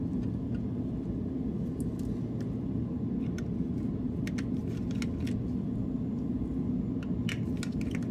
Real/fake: real